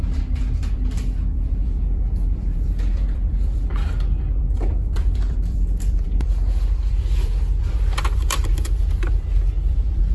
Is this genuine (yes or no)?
no